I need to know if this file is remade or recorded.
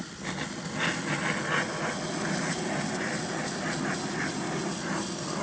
recorded